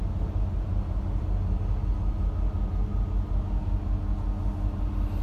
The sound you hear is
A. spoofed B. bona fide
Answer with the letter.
B